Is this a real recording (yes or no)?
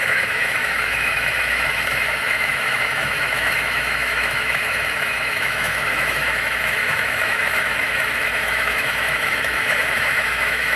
no